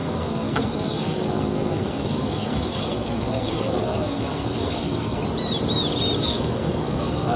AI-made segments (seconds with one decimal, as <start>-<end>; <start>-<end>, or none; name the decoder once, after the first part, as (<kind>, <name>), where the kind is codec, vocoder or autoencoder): 0.0-5.2 (codec, SNAC); 6.2-7.4